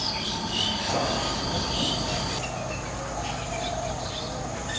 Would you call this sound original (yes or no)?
yes